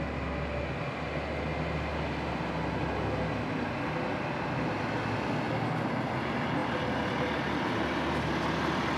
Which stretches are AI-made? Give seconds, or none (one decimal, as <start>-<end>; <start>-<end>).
none